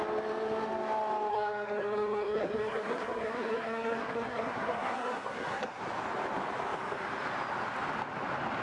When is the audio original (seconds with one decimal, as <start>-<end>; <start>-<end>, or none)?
0.0-1.3; 5.8-8.6